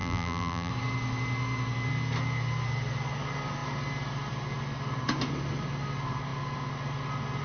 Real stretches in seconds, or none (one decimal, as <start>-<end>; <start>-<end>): 0.7-7.4